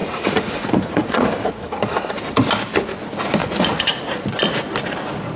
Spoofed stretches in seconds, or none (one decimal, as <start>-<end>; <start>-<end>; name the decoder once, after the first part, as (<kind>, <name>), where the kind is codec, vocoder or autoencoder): 0.0-1.5 (vocoder, Vocos); 3.4-4.0